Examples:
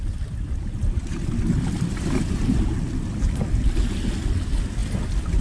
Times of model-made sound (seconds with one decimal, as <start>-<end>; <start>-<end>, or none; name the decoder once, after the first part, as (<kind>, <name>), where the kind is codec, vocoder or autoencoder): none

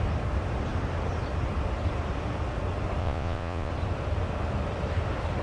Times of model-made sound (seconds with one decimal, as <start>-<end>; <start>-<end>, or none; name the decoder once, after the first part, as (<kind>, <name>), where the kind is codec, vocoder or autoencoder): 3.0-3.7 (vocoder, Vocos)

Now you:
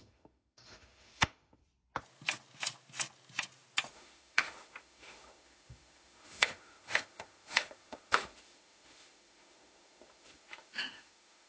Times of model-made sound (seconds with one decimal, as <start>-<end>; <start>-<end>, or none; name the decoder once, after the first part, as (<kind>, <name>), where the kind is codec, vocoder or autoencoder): 0.0-1.6 (autoencoder, DAC-VAE); 3.9-11.5